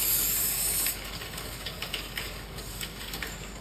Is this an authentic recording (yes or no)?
no